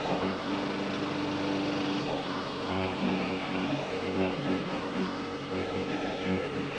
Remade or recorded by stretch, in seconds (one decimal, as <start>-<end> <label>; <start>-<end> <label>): 0.0-0.5 remade; 0.5-2.0 recorded; 2.0-6.8 remade